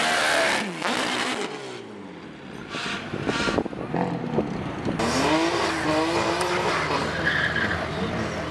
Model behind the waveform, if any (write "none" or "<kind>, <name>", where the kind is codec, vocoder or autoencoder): none